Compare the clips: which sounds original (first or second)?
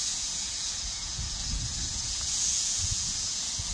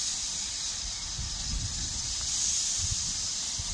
second